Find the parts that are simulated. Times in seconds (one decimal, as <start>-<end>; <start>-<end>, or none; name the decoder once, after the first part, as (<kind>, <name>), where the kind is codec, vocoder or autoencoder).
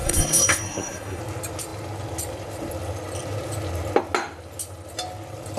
0.0-1.2 (codec, SNAC)